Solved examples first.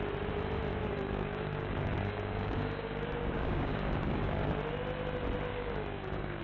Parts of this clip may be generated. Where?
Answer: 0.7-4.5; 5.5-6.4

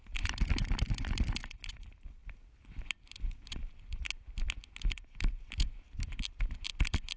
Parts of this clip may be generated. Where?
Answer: none

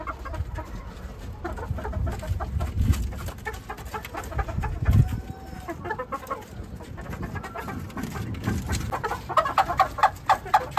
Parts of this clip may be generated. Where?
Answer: none

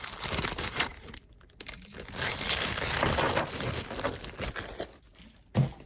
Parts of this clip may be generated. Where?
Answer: none